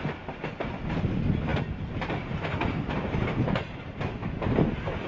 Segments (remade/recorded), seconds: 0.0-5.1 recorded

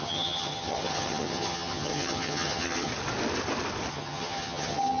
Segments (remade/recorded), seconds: 0.0-2.9 remade; 2.9-3.9 recorded; 3.9-5.0 remade

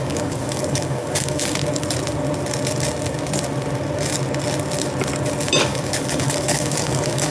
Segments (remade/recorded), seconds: 0.0-1.6 remade; 1.6-5.6 recorded; 5.6-7.3 remade

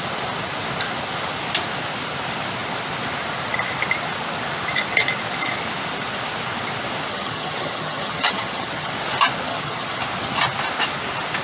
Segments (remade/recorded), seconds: 0.0-7.1 recorded; 7.1-8.9 remade; 8.9-9.5 recorded; 9.5-10.0 remade; 10.0-11.4 recorded

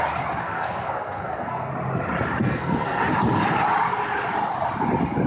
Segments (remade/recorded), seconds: 0.0-0.4 recorded; 0.4-1.7 remade; 1.7-2.4 recorded; 2.4-3.0 remade; 3.0-5.3 recorded